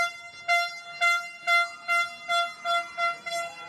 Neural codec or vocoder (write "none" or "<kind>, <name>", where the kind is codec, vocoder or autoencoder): none